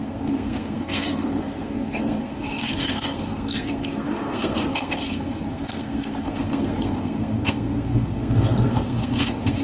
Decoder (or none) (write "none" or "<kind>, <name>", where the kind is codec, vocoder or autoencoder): codec, SNAC